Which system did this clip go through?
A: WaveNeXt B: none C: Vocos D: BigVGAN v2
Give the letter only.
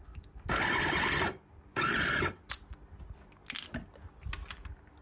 B